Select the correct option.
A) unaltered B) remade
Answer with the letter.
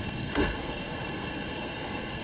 B